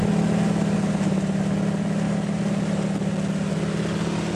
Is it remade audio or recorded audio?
recorded